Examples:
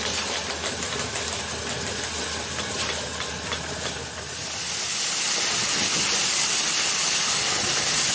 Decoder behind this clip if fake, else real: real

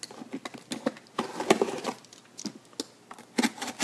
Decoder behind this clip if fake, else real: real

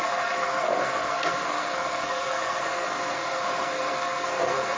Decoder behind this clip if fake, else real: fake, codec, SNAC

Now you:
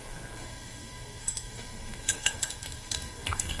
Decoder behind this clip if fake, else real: fake, codec, SNAC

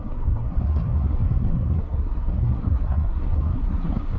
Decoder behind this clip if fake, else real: fake, codec, SNAC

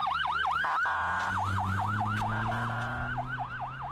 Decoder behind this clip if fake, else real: real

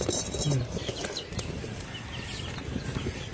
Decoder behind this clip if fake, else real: fake, vocoder, BigVGAN v2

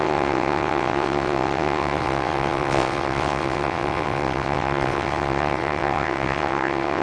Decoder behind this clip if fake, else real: fake, vocoder, WaveNeXt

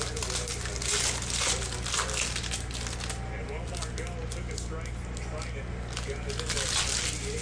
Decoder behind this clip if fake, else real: real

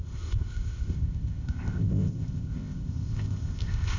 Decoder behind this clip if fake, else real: fake, codec, ZipCodec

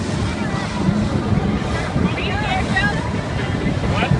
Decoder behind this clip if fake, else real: real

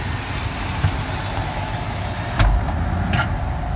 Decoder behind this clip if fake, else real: real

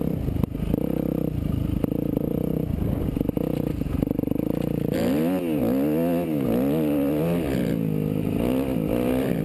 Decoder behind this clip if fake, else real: real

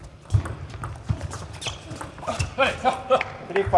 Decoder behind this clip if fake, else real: real